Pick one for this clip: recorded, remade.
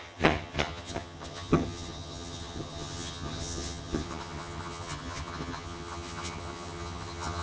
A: remade